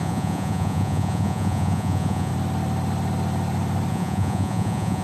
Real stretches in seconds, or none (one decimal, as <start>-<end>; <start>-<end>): 2.3-3.9